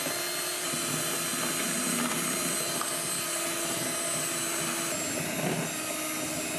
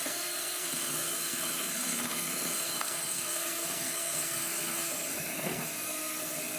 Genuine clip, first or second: first